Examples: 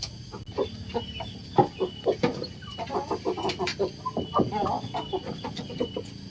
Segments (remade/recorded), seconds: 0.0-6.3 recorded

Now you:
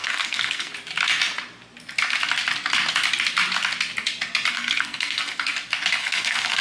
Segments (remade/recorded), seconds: 0.0-0.7 remade; 0.7-4.5 recorded; 4.5-5.5 remade; 5.5-6.0 recorded; 6.0-6.6 remade

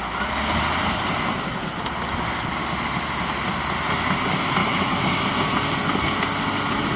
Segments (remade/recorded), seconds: 0.0-4.6 recorded; 4.6-5.3 remade; 5.3-7.0 recorded

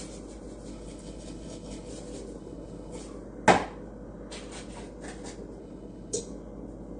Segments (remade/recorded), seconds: 0.0-0.7 recorded; 0.7-1.9 remade; 1.9-2.4 recorded; 2.4-3.0 remade; 3.0-5.6 recorded; 5.6-6.2 remade; 6.2-7.0 recorded

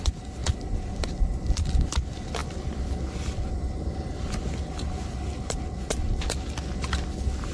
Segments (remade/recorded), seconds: 0.0-7.5 recorded

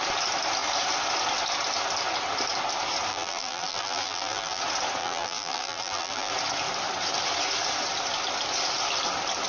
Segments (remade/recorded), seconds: 0.0-3.1 recorded; 3.1-4.6 remade; 4.6-5.0 recorded; 5.0-6.3 remade; 6.3-9.5 recorded